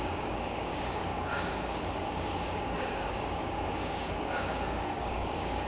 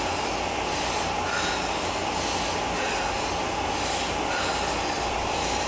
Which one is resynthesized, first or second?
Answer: first